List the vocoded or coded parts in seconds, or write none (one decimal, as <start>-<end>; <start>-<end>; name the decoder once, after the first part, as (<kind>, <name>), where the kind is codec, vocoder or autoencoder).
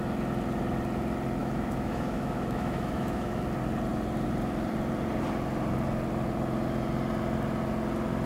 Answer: 1.4-3.4 (autoencoder, DAC-VAE)